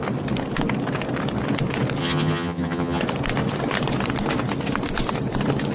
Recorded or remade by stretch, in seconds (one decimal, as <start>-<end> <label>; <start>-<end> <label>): 0.0-2.0 recorded; 2.0-3.0 remade; 3.0-5.7 recorded